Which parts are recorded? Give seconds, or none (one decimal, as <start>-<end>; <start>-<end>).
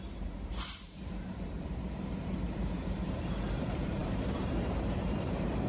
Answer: none